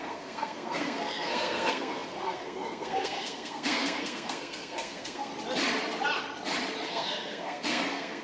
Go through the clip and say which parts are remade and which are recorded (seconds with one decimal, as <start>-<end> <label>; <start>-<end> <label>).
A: 0.0-5.3 remade; 5.3-6.9 recorded; 6.9-8.2 remade